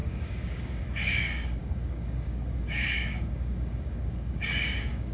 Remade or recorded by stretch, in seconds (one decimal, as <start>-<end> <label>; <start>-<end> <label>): 0.0-5.1 remade